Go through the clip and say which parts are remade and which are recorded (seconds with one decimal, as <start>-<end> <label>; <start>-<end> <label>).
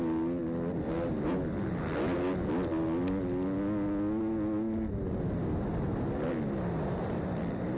0.0-7.8 recorded